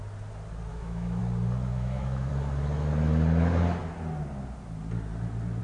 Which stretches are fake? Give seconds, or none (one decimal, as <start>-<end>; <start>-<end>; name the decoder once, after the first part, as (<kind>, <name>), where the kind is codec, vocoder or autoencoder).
0.7-1.2 (autoencoder, DAC-VAE); 1.7-2.3